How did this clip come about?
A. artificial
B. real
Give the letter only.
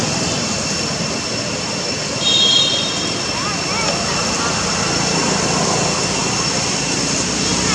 B